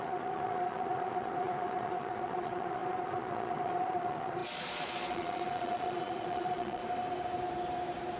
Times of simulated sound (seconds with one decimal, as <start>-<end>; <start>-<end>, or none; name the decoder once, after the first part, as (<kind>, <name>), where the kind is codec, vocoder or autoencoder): 0.0-6.8 (vocoder, Vocos)